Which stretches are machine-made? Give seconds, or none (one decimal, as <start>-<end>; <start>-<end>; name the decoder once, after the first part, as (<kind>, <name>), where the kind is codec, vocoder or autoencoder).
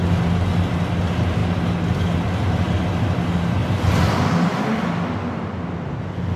none